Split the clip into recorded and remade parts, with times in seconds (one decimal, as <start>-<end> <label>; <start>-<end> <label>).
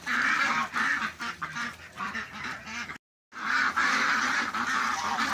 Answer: 0.0-0.9 remade; 0.9-4.1 recorded; 4.1-5.3 remade